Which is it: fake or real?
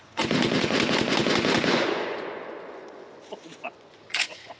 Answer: fake